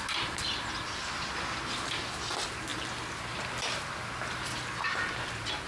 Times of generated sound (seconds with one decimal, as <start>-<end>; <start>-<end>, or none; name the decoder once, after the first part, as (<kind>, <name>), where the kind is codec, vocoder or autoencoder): none